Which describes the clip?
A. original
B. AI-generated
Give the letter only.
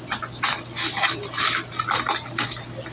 A